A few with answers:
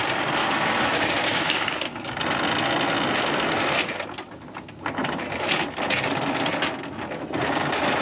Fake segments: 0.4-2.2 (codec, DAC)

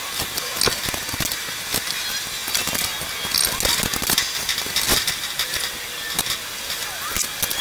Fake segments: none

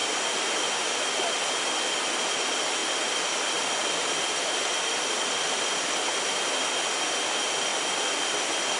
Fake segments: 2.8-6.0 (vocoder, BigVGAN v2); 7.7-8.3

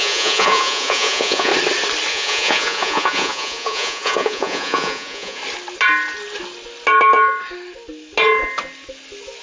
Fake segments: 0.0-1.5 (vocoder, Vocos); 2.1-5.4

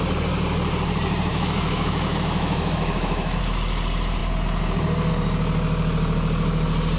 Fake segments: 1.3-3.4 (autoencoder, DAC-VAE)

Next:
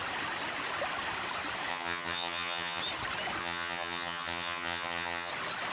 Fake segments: 1.7-2.8 (vocoder, HiFi-GAN); 3.4-5.3